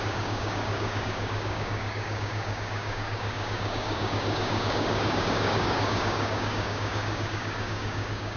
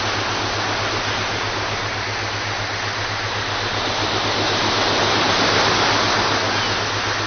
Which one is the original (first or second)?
second